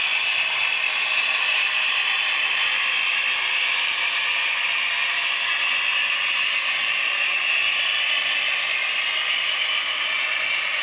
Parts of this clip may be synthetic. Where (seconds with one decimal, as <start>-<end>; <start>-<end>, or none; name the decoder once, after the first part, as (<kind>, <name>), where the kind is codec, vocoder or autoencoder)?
none

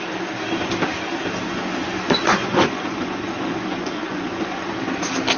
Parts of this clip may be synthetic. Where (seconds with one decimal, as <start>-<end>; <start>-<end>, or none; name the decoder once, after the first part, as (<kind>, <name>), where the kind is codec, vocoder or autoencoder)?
1.5-4.7 (vocoder, Vocos)

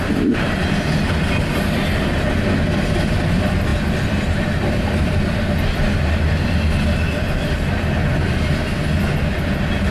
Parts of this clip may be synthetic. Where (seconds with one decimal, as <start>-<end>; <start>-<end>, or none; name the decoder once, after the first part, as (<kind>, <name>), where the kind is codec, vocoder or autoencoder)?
none